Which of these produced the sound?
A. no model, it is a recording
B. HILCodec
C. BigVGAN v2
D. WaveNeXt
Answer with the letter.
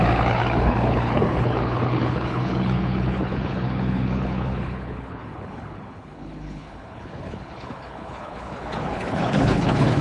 B